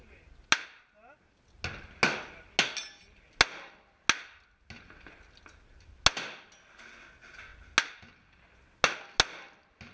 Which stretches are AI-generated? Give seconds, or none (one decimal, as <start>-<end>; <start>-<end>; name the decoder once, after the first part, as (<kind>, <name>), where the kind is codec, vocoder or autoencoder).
none